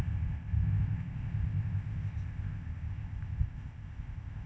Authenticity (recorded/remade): remade